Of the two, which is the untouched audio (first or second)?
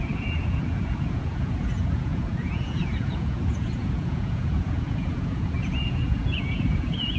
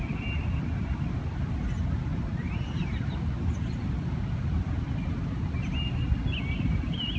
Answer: second